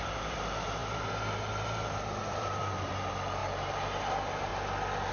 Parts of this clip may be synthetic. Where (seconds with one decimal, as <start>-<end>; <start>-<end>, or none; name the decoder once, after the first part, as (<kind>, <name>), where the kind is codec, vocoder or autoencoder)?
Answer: 0.0-4.5 (vocoder, BigVGAN v2)